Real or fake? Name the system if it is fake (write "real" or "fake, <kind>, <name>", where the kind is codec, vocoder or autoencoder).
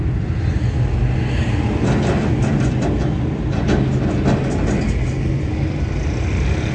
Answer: real